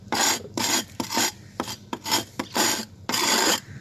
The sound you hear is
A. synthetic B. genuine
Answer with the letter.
A